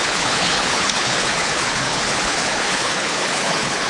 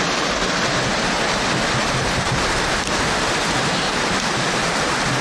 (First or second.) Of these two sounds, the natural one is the second